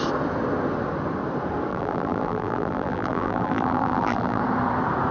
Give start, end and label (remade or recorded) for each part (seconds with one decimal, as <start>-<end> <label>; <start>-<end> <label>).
0.0-1.7 recorded; 1.7-4.4 remade; 4.4-5.1 recorded